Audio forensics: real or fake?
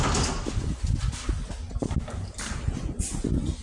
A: real